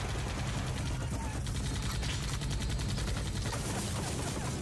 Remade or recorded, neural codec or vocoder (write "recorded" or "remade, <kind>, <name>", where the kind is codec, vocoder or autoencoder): recorded